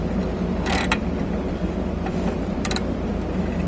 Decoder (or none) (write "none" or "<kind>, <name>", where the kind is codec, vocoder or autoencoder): vocoder, BigVGAN v2